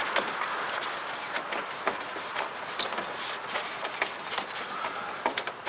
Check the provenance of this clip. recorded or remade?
recorded